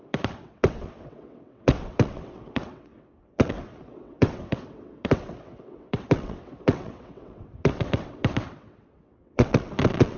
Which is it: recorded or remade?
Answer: remade